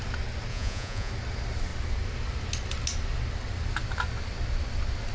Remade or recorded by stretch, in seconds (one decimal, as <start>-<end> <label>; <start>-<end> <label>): 0.0-0.5 recorded; 0.5-1.1 remade; 1.1-5.1 recorded